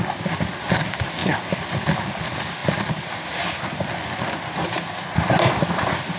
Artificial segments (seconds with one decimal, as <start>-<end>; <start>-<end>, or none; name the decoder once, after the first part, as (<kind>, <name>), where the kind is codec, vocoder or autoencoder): none

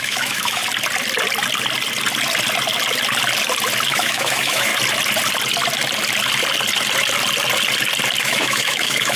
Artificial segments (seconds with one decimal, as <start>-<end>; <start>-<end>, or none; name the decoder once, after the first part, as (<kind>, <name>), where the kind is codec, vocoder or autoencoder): 0.0-0.6 (autoencoder, DAC-VAE); 3.9-4.7; 8.2-9.2

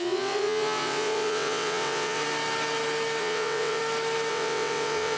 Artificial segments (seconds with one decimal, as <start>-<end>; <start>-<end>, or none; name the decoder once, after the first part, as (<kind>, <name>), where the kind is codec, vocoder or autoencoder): 0.0-2.2 (vocoder, WaveNeXt); 3.2-3.8; 4.3-5.2

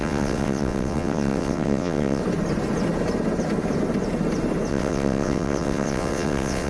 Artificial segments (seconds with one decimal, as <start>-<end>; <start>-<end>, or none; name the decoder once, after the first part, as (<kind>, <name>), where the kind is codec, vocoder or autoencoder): 0.0-2.2 (vocoder, WaveNeXt); 4.7-6.7

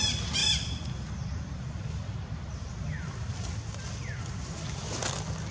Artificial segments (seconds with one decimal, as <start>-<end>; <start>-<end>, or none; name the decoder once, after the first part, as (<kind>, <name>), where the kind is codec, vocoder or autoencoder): 0.4-3.7 (vocoder, BigVGAN v2)

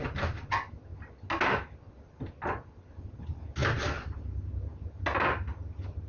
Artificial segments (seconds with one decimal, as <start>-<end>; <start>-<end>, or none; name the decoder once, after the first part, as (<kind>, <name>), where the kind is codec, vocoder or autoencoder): none

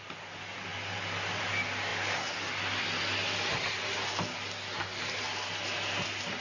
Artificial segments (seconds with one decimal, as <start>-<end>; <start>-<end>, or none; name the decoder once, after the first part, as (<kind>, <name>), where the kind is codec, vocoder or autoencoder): none